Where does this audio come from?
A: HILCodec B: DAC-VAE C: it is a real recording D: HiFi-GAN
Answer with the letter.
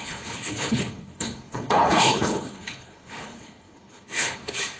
A